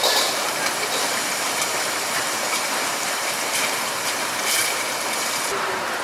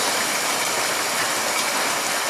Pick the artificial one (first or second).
first